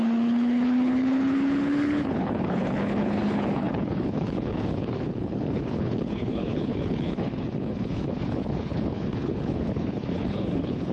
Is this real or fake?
fake